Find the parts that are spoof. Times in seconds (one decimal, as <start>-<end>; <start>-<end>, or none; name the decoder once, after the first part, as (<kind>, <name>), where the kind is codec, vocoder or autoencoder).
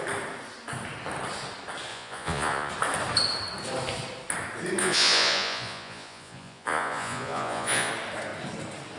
1.9-2.7 (vocoder, Vocos); 4.8-7.9